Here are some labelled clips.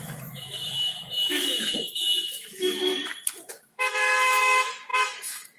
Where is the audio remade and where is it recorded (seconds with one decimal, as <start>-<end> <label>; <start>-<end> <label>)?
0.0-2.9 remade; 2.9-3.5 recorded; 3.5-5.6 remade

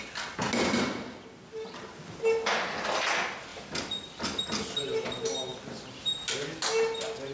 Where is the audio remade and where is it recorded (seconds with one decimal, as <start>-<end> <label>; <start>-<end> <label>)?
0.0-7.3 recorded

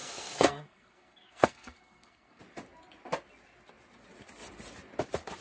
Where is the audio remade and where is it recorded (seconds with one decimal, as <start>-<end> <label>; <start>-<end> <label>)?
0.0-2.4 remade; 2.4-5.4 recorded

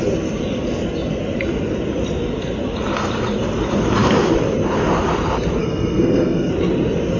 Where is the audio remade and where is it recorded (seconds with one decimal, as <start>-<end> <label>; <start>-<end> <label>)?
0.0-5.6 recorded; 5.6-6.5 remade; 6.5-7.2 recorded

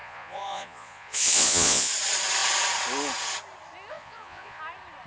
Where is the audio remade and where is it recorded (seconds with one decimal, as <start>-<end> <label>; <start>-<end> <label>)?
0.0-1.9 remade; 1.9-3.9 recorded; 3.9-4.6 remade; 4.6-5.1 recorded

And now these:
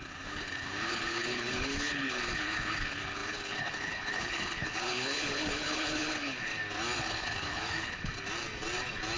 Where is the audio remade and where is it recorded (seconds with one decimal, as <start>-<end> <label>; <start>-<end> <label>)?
0.0-6.5 remade; 6.5-7.0 recorded; 7.0-8.1 remade; 8.1-9.2 recorded

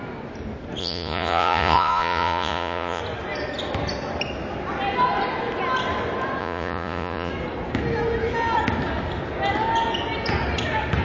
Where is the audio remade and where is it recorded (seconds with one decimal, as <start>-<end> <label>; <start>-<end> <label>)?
0.0-0.8 recorded; 0.8-3.0 remade; 3.0-6.4 recorded; 6.4-7.3 remade; 7.3-11.0 recorded